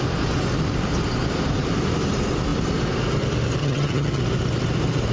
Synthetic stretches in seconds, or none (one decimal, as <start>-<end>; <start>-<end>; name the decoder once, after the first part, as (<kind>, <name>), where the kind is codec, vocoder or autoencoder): 3.6-4.2 (vocoder, HiFi-GAN)